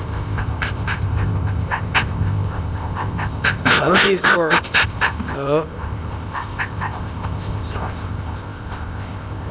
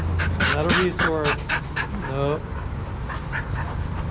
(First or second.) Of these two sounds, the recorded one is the second